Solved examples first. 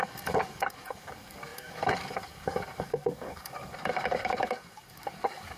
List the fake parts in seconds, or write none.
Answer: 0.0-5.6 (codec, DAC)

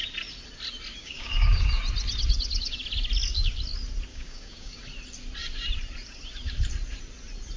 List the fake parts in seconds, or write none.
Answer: 1.0-1.8 (codec, DAC); 4.1-4.8

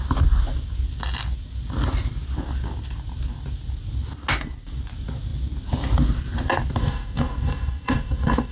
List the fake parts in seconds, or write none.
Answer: 6.8-8.5 (codec, DAC)

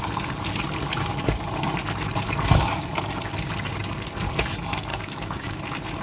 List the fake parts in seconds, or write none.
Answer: 4.9-5.6 (codec, DAC)